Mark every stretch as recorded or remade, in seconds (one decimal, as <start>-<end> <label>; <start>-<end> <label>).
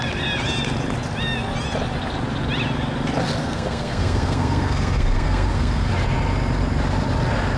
0.0-3.4 recorded; 3.4-5.9 remade; 5.9-7.6 recorded